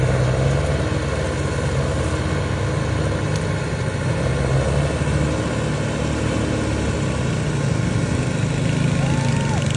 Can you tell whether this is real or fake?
real